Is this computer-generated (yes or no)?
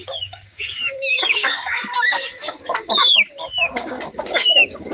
yes